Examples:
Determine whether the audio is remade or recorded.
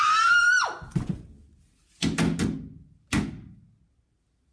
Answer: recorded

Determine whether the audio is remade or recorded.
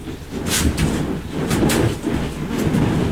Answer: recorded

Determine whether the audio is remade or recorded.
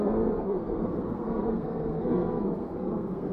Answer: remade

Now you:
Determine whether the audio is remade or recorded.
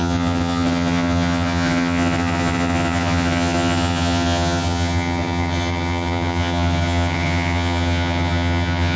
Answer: remade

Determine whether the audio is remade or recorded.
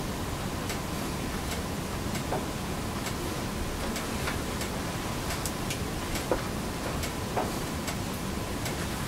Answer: recorded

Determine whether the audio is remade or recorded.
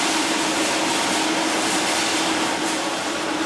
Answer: recorded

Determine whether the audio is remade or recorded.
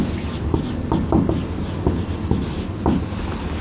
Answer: recorded